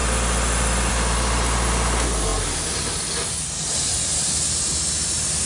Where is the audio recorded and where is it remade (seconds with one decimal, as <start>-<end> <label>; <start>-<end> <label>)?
0.0-5.5 recorded